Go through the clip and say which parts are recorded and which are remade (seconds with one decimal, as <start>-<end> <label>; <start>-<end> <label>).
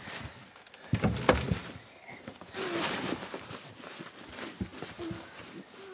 0.0-0.6 remade; 0.6-1.6 recorded; 1.6-3.8 remade; 3.8-5.9 recorded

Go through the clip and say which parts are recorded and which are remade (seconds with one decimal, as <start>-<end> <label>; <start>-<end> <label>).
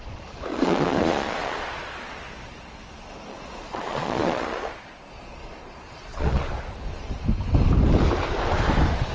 0.0-0.5 recorded; 0.5-2.1 remade; 2.1-3.3 recorded; 3.3-6.6 remade; 6.6-9.1 recorded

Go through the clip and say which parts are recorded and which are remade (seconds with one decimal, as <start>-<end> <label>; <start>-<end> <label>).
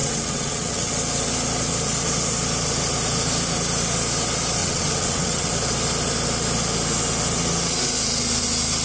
0.0-0.9 remade; 0.9-4.6 recorded; 4.6-5.5 remade; 5.5-8.8 recorded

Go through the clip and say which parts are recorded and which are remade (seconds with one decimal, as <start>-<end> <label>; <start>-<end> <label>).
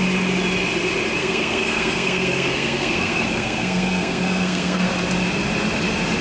0.0-1.2 recorded; 1.2-4.9 remade; 4.9-6.2 recorded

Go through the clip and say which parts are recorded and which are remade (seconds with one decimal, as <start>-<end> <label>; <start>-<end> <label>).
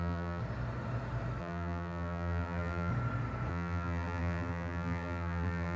0.0-0.4 remade; 0.4-1.4 recorded; 1.4-2.9 remade; 2.9-3.5 recorded; 3.5-5.8 remade